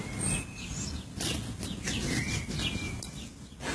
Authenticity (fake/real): real